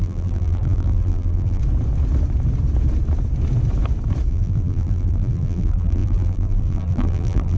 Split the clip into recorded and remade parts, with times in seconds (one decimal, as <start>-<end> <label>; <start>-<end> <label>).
0.0-1.6 remade; 1.6-4.3 recorded; 4.3-7.6 remade